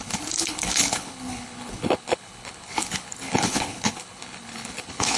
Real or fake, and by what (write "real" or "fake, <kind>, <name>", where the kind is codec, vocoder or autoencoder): fake, codec, HILCodec